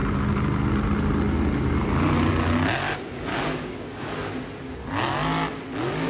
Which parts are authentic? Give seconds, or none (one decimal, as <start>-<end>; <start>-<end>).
0.0-3.3; 4.1-6.1